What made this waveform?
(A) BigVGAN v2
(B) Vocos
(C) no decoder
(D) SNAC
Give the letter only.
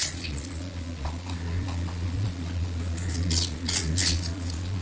B